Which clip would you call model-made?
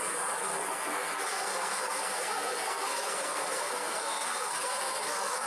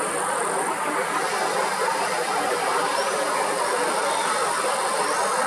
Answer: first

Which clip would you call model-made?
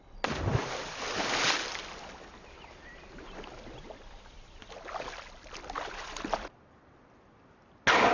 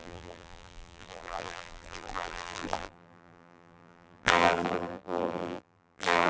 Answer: second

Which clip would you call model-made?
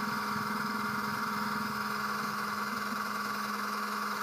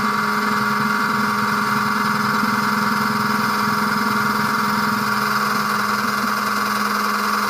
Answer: first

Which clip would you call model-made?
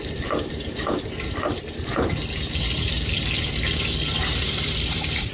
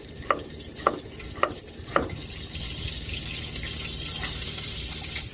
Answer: first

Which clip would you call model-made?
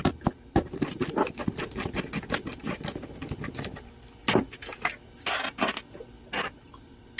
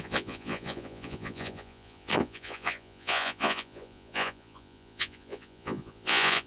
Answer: second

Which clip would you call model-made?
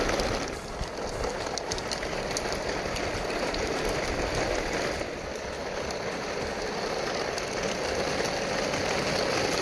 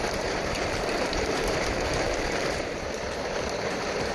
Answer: second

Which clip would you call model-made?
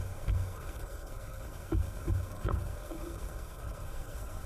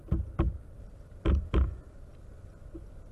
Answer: first